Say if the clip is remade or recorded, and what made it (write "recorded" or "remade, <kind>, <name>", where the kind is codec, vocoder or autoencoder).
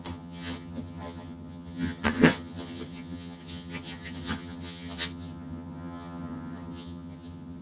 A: remade, vocoder, HiFi-GAN